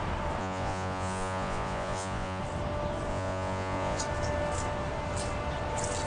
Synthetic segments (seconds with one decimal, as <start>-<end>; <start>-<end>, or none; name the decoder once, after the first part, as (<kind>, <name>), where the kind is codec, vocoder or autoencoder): 0.4-2.4 (vocoder, Vocos); 3.1-4.0